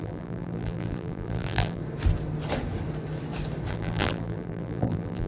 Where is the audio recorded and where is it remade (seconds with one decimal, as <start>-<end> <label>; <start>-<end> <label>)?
0.0-1.8 remade; 1.8-3.7 recorded; 3.7-5.3 remade